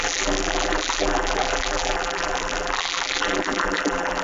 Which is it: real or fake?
fake